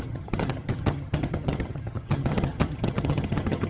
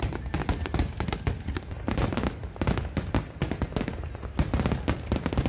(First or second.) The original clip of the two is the second